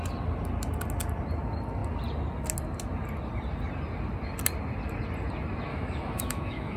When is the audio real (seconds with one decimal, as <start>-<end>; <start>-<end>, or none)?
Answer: 0.0-5.7